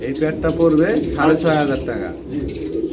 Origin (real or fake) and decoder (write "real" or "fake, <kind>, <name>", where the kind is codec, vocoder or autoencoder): real